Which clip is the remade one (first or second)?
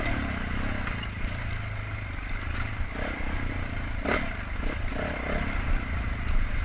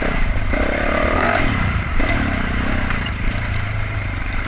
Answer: second